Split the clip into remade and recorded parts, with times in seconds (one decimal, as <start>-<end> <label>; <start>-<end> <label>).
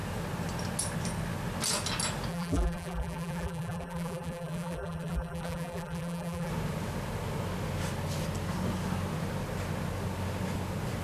0.0-2.3 recorded; 2.3-6.5 remade; 6.5-11.0 recorded